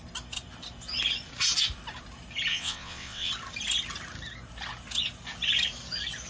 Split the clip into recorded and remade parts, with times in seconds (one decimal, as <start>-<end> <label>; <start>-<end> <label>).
0.0-2.5 recorded; 2.5-3.3 remade; 3.3-6.3 recorded